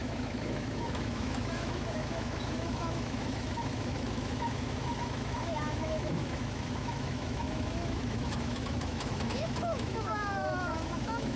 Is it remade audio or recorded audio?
remade